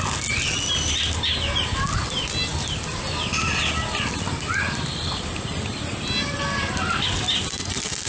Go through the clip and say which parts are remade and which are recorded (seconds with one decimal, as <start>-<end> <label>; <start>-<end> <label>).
0.0-8.1 recorded